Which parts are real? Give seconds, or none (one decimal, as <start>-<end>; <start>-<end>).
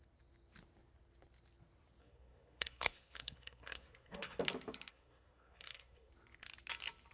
0.0-2.0; 4.4-4.9; 6.1-7.1